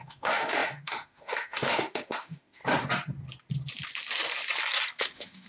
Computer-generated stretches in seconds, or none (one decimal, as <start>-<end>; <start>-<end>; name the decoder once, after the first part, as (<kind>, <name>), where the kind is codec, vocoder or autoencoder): 0.0-2.6 (autoencoder, DAC-VAE); 5.0-5.5